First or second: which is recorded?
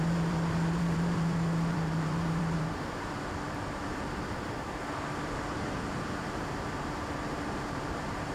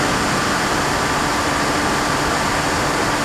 second